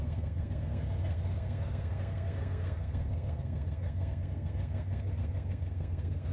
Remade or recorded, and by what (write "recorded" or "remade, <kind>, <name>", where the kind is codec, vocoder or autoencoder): remade, codec, SNAC